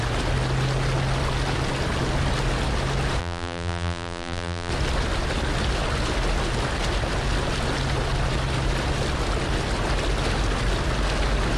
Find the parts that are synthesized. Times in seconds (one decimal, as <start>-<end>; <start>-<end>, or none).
3.2-4.7